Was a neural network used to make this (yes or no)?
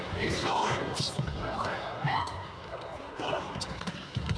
yes